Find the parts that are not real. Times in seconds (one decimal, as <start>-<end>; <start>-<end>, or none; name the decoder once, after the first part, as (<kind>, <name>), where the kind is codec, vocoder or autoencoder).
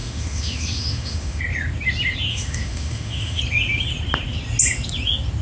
0.0-1.4 (autoencoder, DAC-VAE); 2.3-3.4